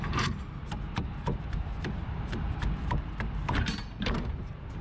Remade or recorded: remade